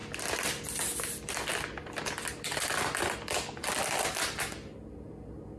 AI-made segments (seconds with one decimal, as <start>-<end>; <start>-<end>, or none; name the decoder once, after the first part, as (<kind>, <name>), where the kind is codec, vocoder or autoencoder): none

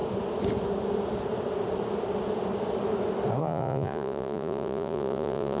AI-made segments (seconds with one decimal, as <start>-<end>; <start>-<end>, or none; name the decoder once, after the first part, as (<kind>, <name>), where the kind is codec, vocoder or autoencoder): 3.4-5.6 (vocoder, Vocos)